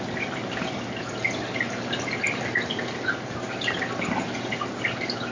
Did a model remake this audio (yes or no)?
no